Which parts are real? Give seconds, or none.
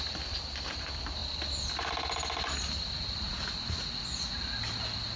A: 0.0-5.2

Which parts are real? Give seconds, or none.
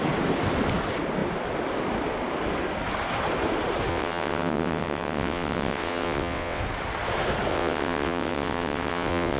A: 0.0-3.9; 6.6-7.5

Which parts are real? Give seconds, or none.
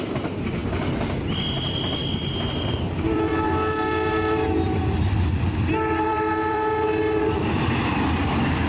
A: 0.6-1.6; 2.0-2.6; 3.3-4.1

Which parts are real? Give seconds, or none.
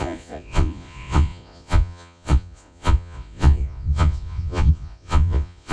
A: none